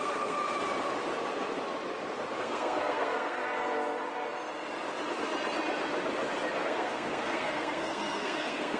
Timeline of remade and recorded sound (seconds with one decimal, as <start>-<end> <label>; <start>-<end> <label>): 0.0-0.4 remade; 0.4-2.4 recorded; 2.4-3.4 remade; 3.4-6.5 recorded; 6.5-8.8 remade